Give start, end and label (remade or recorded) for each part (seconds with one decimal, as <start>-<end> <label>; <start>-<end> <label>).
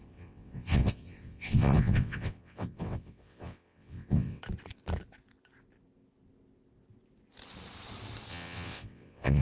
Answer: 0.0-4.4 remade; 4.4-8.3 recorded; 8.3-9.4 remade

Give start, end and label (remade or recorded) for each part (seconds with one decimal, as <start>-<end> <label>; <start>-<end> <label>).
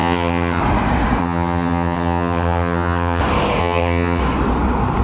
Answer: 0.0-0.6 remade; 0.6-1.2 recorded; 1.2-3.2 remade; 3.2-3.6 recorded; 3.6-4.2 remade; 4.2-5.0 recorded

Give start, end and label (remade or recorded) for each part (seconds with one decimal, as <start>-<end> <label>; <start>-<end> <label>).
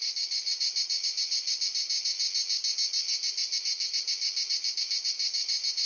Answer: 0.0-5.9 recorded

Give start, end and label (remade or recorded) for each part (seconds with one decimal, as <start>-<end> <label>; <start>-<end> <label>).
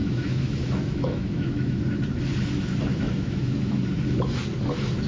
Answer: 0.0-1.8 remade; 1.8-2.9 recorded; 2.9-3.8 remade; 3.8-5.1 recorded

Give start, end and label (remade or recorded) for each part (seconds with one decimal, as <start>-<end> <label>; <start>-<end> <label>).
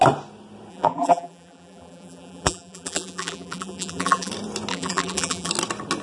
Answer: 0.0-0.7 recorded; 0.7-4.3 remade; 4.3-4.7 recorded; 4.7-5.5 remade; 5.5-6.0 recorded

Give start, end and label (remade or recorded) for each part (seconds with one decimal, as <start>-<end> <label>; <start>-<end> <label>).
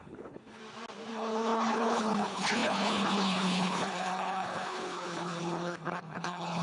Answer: 0.0-0.6 remade; 0.6-1.1 recorded; 1.1-6.6 remade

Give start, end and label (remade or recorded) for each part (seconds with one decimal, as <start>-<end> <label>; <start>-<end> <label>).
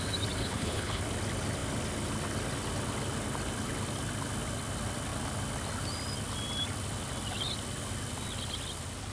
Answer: 0.0-0.4 recorded; 0.4-1.0 remade; 1.0-9.1 recorded